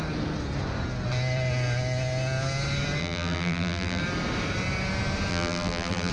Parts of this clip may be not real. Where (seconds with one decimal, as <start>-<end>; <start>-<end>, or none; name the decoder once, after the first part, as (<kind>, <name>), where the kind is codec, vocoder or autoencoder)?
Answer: 3.0-4.0 (vocoder, BigVGAN v2); 5.3-6.1